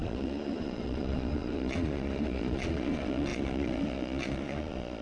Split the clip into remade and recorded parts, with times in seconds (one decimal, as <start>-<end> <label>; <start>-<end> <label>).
0.0-5.0 remade